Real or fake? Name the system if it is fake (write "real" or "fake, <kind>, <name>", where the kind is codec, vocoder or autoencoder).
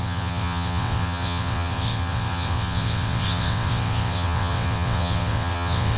fake, vocoder, WaveNeXt